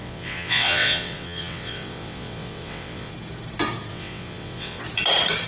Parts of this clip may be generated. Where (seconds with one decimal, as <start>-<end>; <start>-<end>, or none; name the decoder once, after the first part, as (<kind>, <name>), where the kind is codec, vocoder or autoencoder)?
0.0-3.1 (vocoder, WaveNeXt); 3.9-4.8